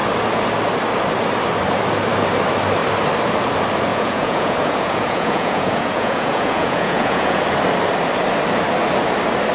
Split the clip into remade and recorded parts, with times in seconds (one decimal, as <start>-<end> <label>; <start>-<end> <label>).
0.0-3.9 recorded; 3.9-7.4 remade; 7.4-9.5 recorded